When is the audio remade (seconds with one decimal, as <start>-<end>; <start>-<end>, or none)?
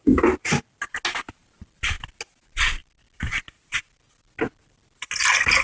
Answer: none